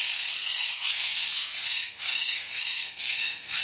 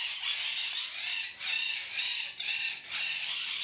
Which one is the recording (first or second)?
second